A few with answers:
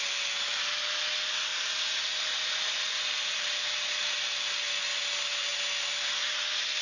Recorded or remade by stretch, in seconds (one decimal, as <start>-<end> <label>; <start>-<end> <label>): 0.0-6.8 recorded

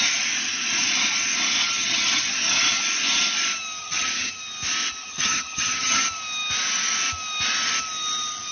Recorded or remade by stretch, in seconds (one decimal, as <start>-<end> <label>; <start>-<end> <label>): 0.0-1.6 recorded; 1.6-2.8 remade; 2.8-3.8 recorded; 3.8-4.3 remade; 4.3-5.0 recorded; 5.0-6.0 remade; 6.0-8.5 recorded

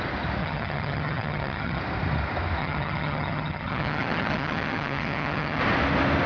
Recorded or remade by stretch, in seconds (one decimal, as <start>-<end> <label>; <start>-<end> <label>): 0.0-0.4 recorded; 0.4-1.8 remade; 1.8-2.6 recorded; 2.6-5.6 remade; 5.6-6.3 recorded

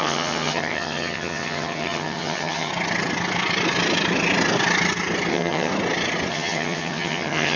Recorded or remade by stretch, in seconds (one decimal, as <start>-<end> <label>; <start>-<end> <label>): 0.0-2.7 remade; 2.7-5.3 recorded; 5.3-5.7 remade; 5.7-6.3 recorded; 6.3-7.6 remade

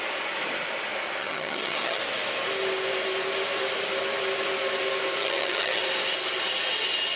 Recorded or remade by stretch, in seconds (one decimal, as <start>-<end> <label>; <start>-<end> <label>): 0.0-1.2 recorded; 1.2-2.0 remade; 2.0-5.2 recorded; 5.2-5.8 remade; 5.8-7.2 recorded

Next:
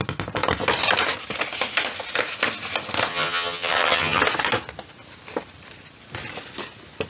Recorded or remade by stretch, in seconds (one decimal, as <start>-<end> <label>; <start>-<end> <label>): 0.0-3.1 recorded; 3.1-4.2 remade; 4.2-7.1 recorded